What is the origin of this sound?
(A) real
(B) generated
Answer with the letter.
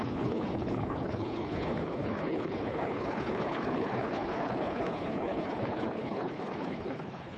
B